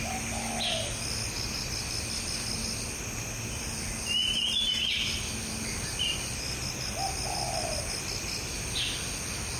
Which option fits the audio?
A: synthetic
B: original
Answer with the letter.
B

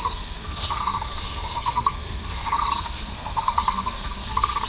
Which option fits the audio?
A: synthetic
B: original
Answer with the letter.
A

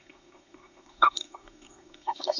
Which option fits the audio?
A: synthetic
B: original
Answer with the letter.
A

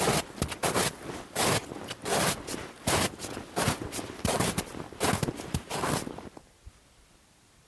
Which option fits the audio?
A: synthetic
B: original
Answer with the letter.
B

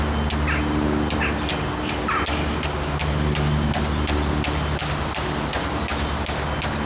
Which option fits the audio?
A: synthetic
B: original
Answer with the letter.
B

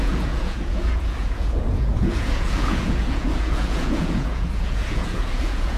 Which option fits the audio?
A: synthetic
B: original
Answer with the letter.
A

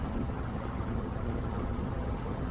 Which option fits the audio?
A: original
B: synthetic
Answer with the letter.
B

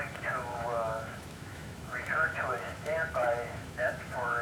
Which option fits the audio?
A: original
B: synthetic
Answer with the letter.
B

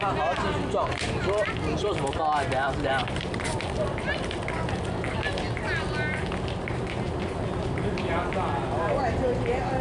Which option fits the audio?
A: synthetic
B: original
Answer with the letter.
B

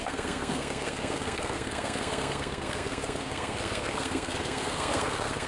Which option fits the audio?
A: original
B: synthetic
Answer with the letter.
B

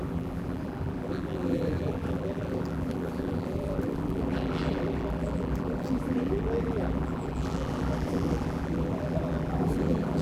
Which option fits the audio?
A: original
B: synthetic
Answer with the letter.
B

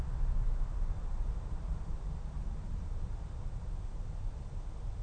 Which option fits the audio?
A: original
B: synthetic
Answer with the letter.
B